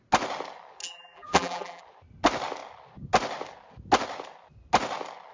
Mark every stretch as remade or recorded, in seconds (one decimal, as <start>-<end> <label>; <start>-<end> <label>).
0.0-0.8 recorded; 0.8-1.8 remade; 1.8-5.3 recorded